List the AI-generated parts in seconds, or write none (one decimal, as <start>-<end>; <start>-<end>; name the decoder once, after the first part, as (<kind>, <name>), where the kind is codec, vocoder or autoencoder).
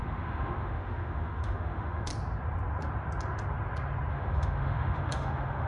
0.0-2.1 (autoencoder, DAC-VAE); 4.1-5.7